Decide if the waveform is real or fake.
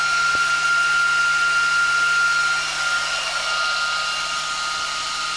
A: real